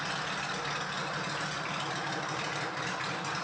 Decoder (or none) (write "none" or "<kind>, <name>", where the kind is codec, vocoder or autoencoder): none